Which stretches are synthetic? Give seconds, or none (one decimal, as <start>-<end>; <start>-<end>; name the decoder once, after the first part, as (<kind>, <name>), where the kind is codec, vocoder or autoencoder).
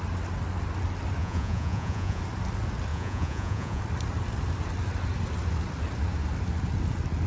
1.2-2.2 (vocoder, Vocos); 2.9-3.8